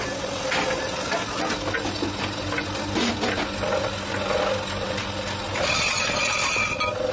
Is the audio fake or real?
real